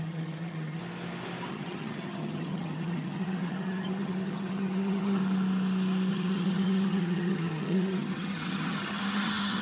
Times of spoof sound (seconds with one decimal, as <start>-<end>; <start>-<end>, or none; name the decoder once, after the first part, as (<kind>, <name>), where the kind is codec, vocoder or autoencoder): 0.0-0.8 (vocoder, HiFi-GAN); 1.5-5.2; 6.1-9.6